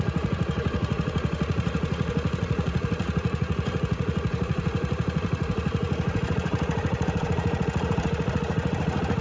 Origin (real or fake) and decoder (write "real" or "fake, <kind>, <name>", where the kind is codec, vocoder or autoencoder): fake, vocoder, Vocos